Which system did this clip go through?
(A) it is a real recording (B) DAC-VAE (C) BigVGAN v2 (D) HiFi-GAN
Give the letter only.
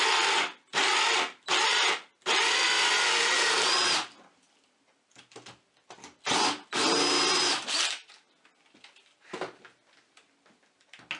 A